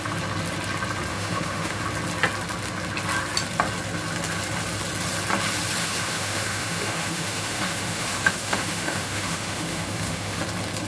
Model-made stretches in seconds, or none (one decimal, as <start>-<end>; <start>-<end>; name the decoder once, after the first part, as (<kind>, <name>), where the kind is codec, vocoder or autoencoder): 1.1-1.8 (autoencoder, DAC-VAE); 5.8-10.4